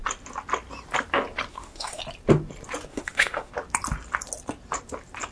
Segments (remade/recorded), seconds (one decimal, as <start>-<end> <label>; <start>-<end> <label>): 0.0-1.5 recorded; 1.5-2.0 remade; 2.0-2.9 recorded; 2.9-3.5 remade; 3.5-5.3 recorded